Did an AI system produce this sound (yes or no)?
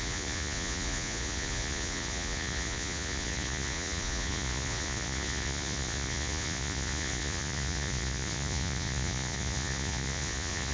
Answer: yes